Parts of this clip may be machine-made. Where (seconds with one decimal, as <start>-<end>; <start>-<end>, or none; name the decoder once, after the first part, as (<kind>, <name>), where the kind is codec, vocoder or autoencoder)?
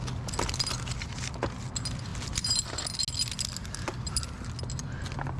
none